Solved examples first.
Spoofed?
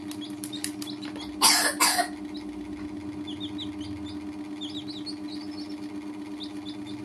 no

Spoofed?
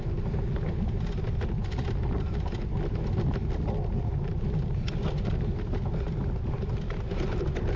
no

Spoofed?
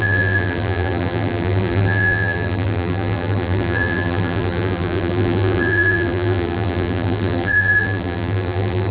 yes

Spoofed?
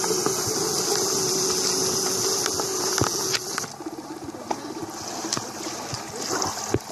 no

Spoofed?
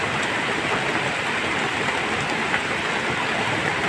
no